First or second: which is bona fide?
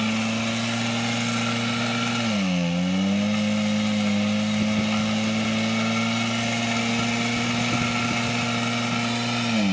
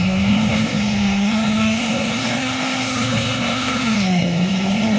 first